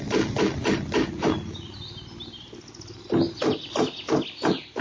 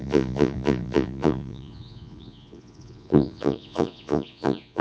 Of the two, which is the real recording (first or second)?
first